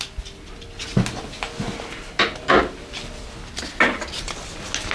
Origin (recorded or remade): recorded